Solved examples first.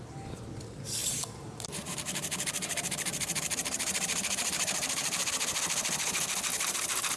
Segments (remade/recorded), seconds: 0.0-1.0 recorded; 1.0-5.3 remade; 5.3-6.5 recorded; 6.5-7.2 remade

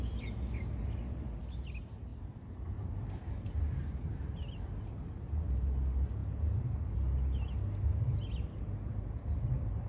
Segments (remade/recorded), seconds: 0.0-2.1 recorded; 2.1-4.3 remade; 4.3-9.9 recorded

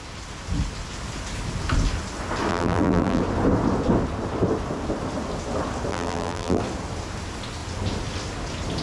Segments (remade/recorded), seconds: 0.0-2.5 recorded; 2.5-3.2 remade; 3.2-5.9 recorded; 5.9-6.6 remade; 6.6-8.8 recorded

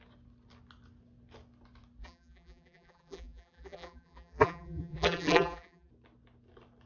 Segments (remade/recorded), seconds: 0.0-2.0 recorded; 2.0-5.9 remade; 5.9-6.9 recorded

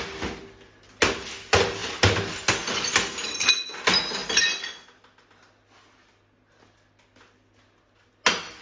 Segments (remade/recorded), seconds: 0.0-8.6 recorded

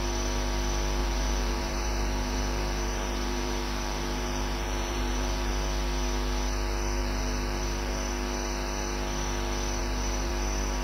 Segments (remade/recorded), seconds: 0.0-1.0 recorded; 1.0-5.5 remade; 5.5-7.0 recorded; 7.0-7.9 remade; 7.9-9.8 recorded; 9.8-10.3 remade; 10.3-10.8 recorded